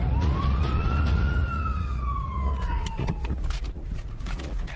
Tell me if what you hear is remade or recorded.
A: remade